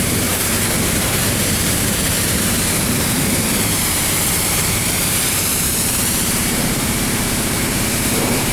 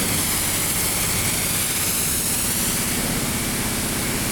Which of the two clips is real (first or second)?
second